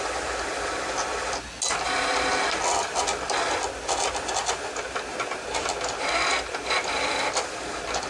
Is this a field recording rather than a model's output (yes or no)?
yes